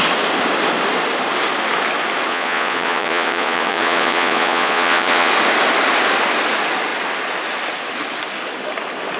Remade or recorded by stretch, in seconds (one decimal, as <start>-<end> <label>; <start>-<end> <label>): 0.0-2.3 recorded; 2.3-5.3 remade; 5.3-9.2 recorded